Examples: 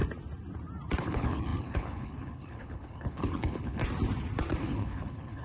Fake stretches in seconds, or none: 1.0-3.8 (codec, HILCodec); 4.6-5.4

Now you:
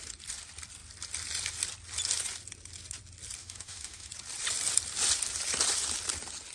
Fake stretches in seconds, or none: 3.4-4.1 (autoencoder, DAC-VAE)

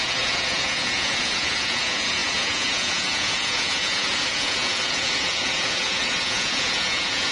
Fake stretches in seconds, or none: 0.0-7.3 (vocoder, Vocos)

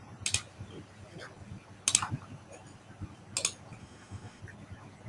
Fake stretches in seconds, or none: 3.8-4.4 (autoencoder, DAC-VAE)

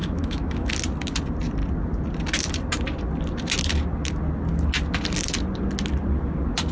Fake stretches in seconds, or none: 0.0-0.7 (autoencoder, DAC-VAE)

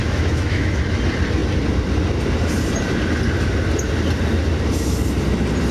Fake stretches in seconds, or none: 0.0-0.8 (autoencoder, DAC-VAE)

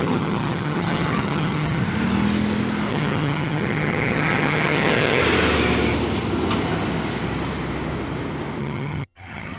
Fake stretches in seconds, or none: 0.0-1.8 (vocoder, HiFi-GAN); 2.9-5.2; 8.6-9.6